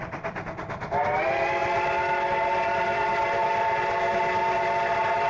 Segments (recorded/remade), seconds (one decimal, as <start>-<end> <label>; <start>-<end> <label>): 0.0-5.3 recorded